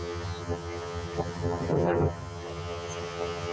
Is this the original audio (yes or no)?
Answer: no